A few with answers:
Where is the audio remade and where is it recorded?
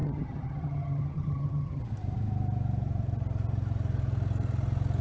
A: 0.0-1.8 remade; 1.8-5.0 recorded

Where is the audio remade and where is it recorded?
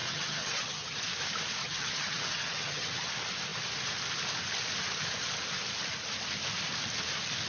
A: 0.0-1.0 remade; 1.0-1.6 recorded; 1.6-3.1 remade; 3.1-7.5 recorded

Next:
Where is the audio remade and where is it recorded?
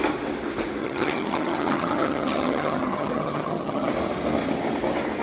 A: 0.0-0.8 recorded; 0.8-3.9 remade; 3.9-5.2 recorded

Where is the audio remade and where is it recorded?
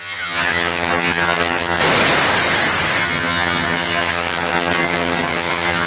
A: 0.0-1.8 remade; 1.8-3.0 recorded; 3.0-5.9 remade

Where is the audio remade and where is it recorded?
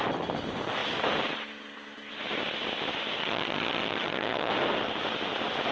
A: 0.0-3.2 recorded; 3.2-4.5 remade; 4.5-5.7 recorded